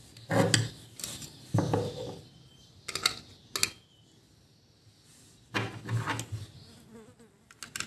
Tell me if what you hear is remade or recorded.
recorded